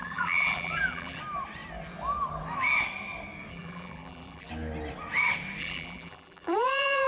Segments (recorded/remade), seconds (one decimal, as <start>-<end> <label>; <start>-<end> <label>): 0.0-1.2 remade; 1.2-3.5 recorded; 3.5-4.5 remade; 4.5-5.6 recorded; 5.6-7.1 remade